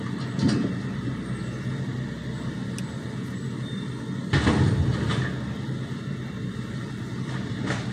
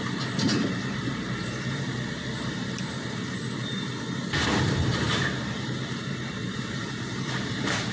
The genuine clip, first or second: first